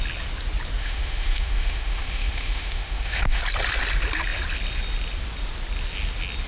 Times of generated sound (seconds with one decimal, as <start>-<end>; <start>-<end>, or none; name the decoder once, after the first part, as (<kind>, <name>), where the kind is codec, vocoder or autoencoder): 0.8-3.4 (autoencoder, DAC-VAE)

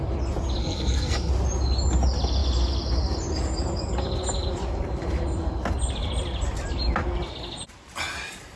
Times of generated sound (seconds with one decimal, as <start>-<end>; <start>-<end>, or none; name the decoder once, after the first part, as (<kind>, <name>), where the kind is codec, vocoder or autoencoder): 0.6-1.3 (codec, SNAC)

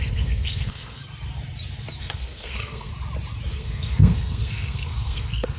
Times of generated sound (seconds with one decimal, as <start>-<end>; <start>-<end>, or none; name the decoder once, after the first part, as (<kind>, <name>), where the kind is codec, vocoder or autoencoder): 0.0-1.0 (codec, SNAC); 2.0-2.9; 3.5-5.6

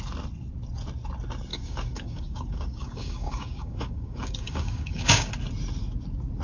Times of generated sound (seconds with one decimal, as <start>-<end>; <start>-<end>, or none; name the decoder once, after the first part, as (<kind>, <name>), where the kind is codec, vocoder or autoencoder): 1.5-5.3 (codec, DAC)

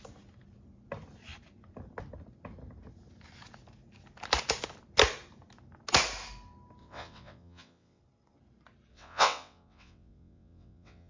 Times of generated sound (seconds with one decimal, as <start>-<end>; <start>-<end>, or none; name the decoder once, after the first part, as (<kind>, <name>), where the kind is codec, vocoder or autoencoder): 6.8-8.0 (vocoder, WaveNeXt); 8.9-11.1

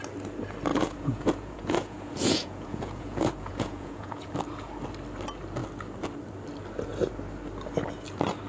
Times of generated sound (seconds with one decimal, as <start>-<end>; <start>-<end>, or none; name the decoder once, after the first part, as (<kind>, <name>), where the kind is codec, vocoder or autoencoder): 0.7-4.3 (vocoder, Vocos)

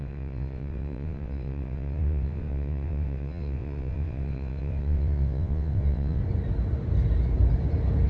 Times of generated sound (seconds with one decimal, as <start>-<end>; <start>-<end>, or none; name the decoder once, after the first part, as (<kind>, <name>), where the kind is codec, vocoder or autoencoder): 0.0-6.2 (vocoder, WaveNeXt)